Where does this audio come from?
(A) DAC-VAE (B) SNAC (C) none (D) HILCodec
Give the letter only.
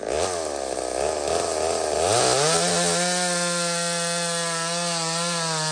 C